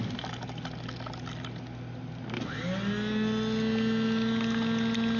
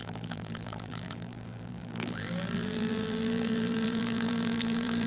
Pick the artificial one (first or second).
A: second